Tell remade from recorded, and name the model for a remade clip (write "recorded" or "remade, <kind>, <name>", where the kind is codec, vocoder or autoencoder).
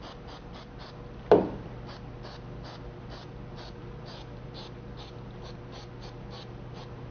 recorded